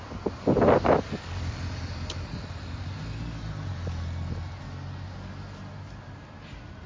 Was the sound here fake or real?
real